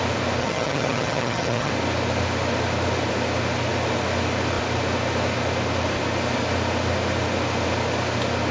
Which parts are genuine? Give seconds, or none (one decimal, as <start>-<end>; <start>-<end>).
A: 0.0-0.4; 1.7-8.5